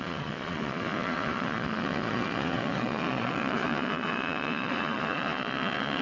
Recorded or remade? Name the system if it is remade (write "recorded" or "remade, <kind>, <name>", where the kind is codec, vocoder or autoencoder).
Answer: remade, vocoder, Vocos